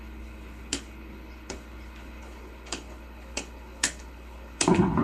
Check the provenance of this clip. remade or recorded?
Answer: remade